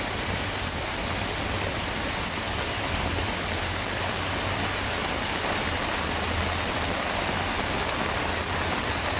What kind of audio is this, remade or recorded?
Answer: recorded